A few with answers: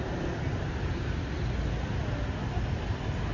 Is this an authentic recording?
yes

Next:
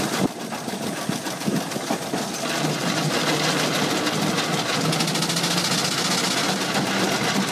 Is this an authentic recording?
yes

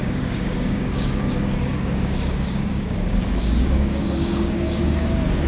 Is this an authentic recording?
no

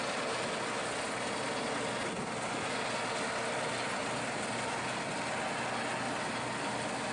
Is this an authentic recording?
yes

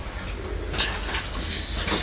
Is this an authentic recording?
yes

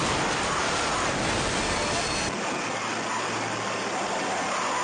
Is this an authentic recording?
yes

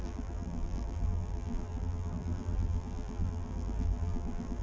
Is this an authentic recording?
no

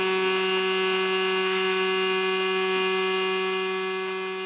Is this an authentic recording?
yes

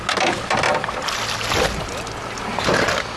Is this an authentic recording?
yes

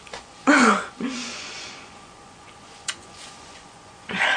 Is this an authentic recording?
no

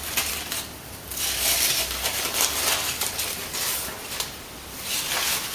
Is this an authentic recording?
no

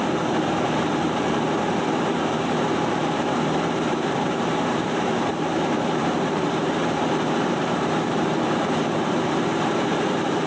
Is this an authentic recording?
no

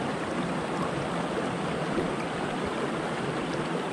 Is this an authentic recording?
yes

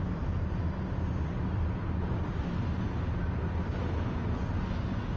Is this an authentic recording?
yes